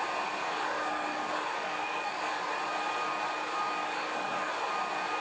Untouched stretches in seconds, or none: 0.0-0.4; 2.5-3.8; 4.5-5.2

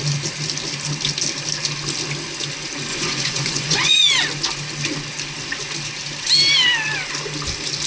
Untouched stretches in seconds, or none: 0.0-2.9; 4.0-7.9

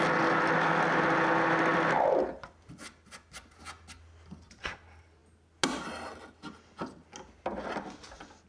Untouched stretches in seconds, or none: 0.0-8.5

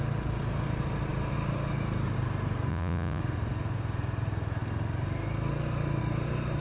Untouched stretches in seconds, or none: 0.0-2.7; 3.2-6.6

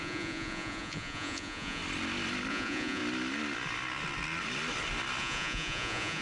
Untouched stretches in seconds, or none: 1.8-2.5; 3.0-5.2